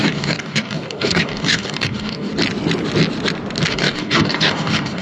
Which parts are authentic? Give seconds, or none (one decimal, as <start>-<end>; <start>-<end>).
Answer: 2.3-3.7